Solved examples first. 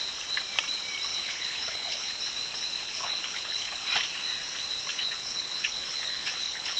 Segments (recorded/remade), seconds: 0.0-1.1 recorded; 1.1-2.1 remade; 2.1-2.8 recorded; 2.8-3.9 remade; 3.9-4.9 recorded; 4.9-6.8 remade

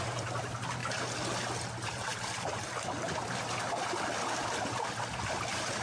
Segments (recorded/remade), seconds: 0.0-5.8 recorded

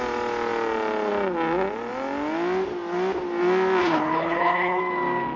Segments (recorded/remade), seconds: 0.0-3.8 recorded; 3.8-4.8 remade; 4.8-5.4 recorded